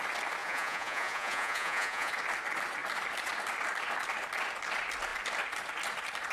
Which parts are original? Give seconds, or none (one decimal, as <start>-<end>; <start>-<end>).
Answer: 0.0-0.4; 2.1-6.3